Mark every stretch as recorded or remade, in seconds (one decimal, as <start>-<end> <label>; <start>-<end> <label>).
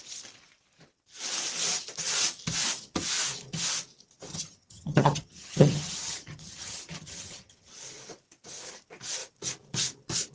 0.0-4.3 recorded; 4.3-7.7 remade; 7.7-10.3 recorded